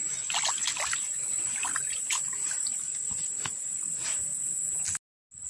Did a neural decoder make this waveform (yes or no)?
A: no